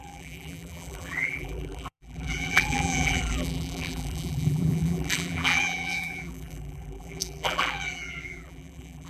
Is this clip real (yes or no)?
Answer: no